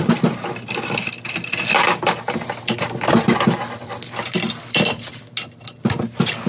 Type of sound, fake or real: real